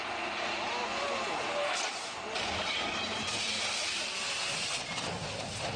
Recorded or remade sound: recorded